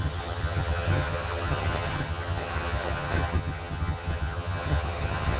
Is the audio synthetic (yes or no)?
yes